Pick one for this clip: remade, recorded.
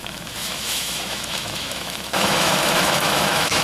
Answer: remade